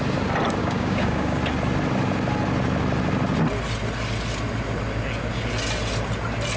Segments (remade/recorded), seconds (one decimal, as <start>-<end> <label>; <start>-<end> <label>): 0.0-0.6 recorded; 0.6-1.4 remade; 1.4-6.6 recorded